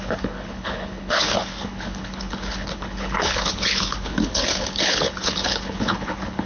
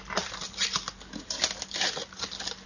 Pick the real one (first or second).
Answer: second